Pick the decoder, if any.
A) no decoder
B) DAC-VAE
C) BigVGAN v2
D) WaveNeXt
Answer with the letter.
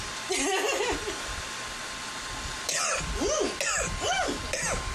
A